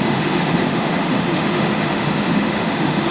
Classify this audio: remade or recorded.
remade